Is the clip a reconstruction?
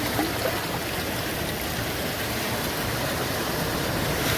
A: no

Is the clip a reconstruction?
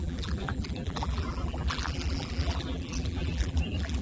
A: yes